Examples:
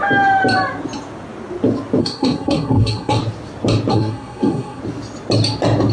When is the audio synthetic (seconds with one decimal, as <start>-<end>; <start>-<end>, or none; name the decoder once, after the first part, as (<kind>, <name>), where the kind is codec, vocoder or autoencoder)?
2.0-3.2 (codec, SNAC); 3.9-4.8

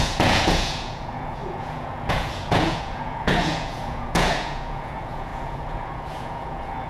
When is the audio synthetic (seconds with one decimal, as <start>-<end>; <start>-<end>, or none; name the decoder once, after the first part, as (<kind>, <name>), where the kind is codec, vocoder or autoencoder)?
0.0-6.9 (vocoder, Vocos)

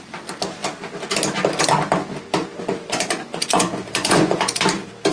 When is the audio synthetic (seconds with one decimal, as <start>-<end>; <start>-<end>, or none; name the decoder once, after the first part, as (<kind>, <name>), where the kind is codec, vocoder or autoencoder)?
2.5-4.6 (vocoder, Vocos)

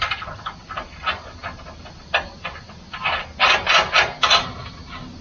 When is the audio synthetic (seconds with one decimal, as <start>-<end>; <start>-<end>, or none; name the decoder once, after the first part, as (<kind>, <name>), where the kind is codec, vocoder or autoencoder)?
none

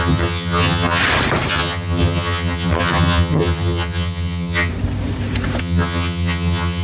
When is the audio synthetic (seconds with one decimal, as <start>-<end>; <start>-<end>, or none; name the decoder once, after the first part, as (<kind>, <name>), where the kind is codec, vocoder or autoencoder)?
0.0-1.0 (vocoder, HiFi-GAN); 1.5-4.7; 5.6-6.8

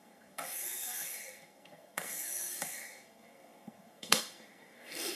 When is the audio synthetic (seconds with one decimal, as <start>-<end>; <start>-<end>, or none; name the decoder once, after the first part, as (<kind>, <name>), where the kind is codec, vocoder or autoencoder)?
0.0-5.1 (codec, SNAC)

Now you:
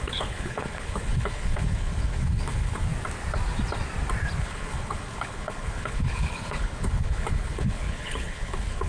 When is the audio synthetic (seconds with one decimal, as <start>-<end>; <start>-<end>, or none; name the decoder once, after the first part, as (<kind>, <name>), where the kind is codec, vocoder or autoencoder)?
0.0-2.9 (codec, HILCodec); 4.4-8.9